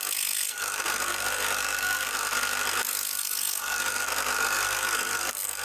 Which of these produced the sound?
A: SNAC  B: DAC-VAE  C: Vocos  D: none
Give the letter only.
A